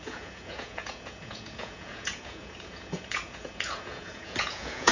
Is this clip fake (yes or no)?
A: yes